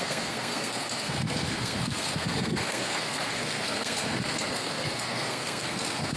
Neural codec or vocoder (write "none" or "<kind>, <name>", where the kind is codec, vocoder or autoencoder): codec, SNAC